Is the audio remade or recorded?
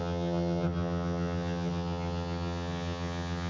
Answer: remade